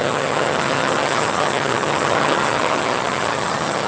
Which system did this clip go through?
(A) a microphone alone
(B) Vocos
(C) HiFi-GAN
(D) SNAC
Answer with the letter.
C